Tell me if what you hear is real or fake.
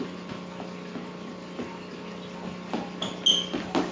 real